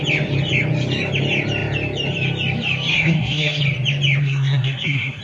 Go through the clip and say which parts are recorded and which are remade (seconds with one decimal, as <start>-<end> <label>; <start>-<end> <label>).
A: 0.0-2.9 recorded; 2.9-3.6 remade; 3.6-4.2 recorded; 4.2-5.2 remade